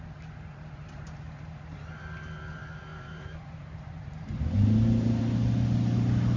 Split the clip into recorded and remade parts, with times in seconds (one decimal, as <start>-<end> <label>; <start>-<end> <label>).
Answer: 0.0-2.9 recorded; 2.9-5.2 remade; 5.2-6.4 recorded